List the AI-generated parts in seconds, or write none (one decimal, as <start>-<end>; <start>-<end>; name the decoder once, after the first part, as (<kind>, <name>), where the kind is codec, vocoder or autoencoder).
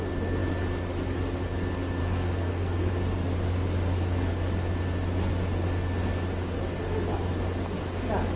2.0-2.9 (codec, SNAC)